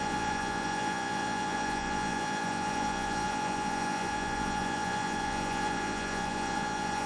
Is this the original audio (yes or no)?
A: no